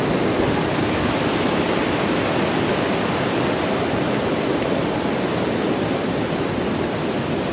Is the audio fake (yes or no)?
no